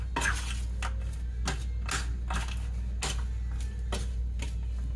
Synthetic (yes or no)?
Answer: no